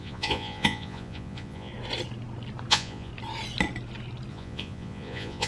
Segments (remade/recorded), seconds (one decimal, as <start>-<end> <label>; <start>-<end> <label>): 0.0-1.7 remade; 1.7-2.7 recorded; 2.7-3.1 remade; 3.1-4.3 recorded; 4.3-5.5 remade